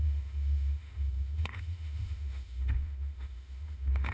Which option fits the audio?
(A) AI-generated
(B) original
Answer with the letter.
A